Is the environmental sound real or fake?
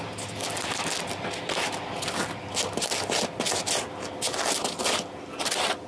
real